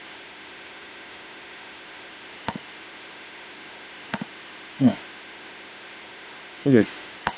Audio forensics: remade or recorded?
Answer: remade